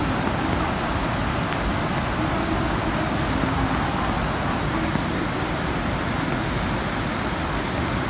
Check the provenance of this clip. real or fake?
real